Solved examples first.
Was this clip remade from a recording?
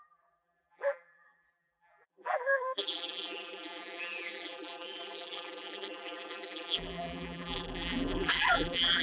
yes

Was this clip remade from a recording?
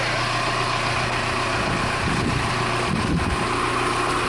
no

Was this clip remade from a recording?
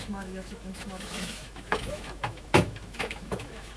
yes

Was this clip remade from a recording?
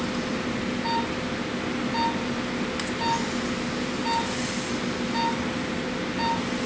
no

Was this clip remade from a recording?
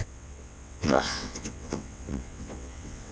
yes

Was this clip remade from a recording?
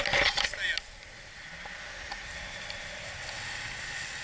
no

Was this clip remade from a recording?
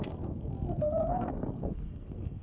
yes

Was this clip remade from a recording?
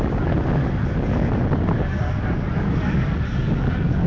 no